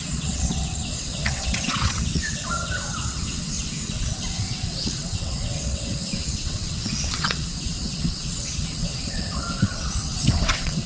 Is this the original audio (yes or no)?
no